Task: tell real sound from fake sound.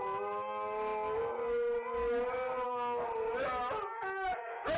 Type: real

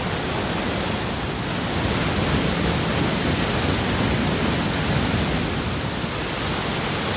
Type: real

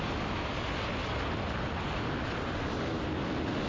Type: real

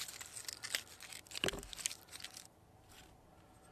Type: real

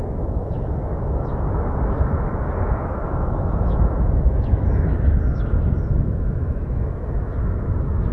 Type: fake